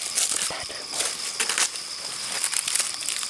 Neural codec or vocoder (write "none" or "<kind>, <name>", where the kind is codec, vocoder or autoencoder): none